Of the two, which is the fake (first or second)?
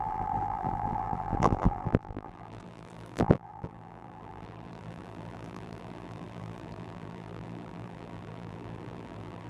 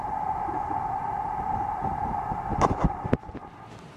first